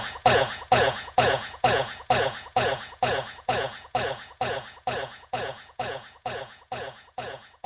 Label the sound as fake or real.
fake